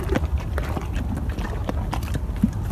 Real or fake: real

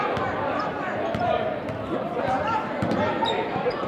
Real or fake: fake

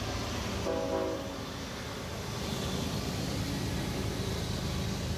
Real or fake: real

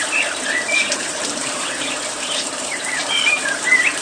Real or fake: fake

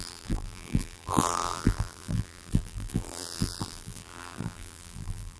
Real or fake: fake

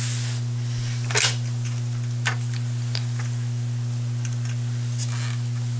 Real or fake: real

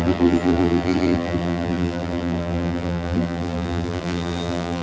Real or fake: fake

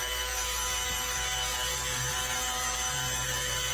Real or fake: fake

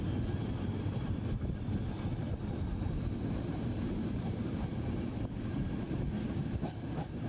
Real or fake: fake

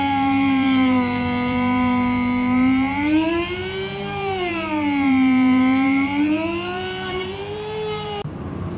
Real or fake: fake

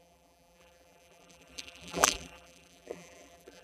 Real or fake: fake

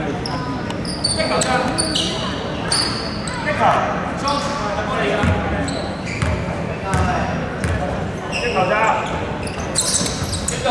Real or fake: real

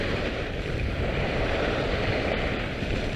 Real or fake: fake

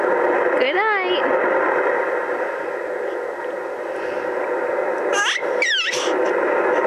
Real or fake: real